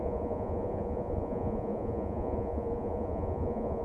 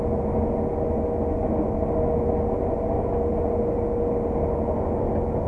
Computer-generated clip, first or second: first